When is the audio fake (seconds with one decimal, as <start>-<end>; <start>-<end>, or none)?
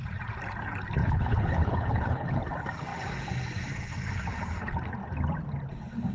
1.0-2.4